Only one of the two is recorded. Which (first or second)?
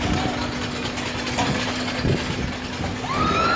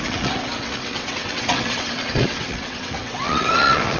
first